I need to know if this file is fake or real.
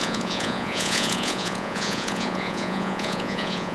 fake